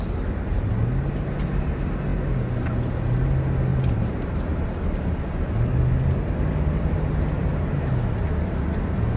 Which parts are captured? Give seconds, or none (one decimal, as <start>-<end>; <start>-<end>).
0.0-3.7; 4.4-9.2